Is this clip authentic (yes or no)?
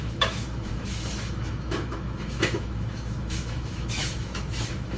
no